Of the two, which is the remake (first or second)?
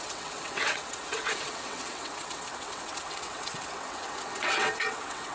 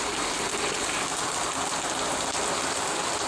first